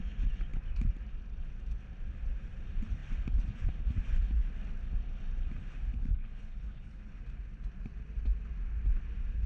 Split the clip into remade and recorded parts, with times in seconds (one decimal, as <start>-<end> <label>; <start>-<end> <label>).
0.0-5.9 recorded; 5.9-7.2 remade; 7.2-9.5 recorded